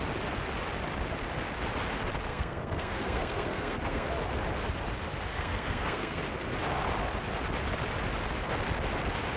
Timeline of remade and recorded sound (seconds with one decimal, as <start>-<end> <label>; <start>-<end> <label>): 0.0-2.3 recorded; 2.3-4.1 remade; 4.1-5.3 recorded; 5.3-6.2 remade; 6.2-9.4 recorded